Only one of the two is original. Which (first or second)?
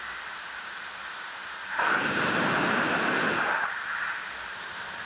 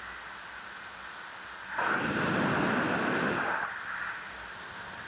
second